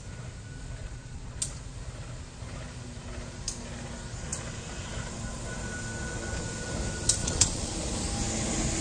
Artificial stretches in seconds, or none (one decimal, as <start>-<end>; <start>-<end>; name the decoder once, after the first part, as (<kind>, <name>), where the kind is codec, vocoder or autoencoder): 0.8-1.4 (vocoder, Vocos); 7.2-7.7